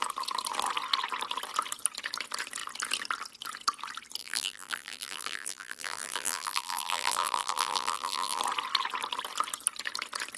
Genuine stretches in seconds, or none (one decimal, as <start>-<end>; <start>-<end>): 0.0-4.2; 8.4-10.4